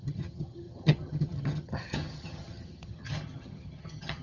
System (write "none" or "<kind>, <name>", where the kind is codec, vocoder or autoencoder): vocoder, HiFi-GAN